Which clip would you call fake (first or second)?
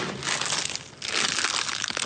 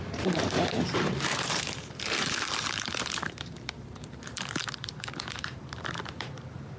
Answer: second